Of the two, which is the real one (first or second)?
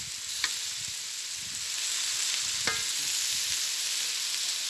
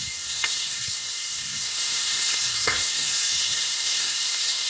first